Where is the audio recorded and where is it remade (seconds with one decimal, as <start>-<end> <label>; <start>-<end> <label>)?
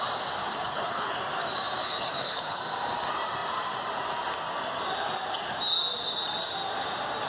0.0-0.4 recorded; 0.4-1.2 remade; 1.2-1.8 recorded; 1.8-2.6 remade; 2.6-7.3 recorded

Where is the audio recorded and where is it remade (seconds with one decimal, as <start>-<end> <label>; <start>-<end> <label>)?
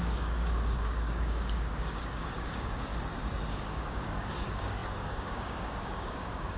0.0-2.9 remade; 2.9-3.5 recorded; 3.5-6.6 remade